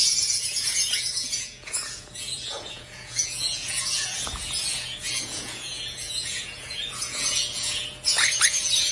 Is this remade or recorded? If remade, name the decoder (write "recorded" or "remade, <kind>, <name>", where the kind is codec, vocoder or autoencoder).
remade, vocoder, Vocos